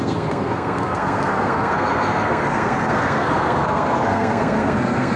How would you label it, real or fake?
fake